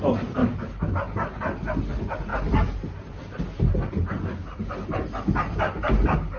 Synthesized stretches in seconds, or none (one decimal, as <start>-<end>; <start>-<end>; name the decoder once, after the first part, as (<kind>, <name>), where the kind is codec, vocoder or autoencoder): 0.4-0.9 (autoencoder, DAC-VAE)